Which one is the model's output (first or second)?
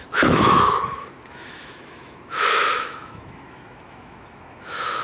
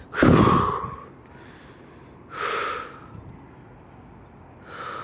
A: first